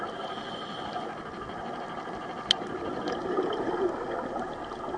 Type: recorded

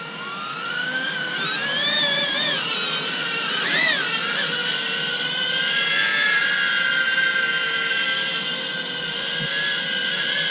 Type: recorded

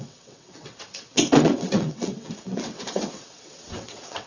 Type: remade